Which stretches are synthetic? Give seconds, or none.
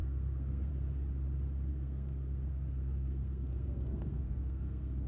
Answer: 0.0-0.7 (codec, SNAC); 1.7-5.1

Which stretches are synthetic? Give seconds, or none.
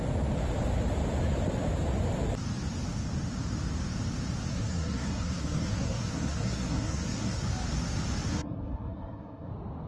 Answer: 4.5-7.4 (codec, SNAC); 8.3-9.5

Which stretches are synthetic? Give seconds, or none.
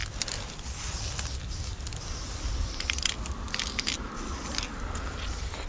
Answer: none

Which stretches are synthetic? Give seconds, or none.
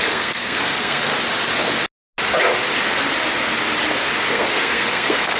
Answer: 0.0-1.1 (codec, SNAC); 4.3-5.4